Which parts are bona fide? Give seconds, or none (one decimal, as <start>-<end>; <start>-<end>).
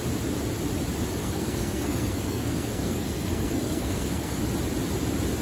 0.0-1.2; 4.4-5.4